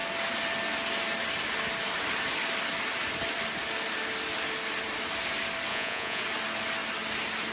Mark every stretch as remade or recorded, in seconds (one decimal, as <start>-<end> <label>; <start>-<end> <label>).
0.0-5.7 recorded; 5.7-6.2 remade; 6.2-7.5 recorded